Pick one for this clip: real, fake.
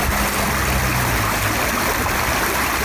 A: real